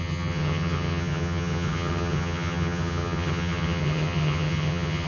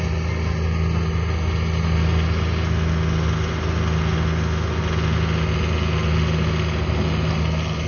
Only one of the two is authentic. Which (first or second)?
second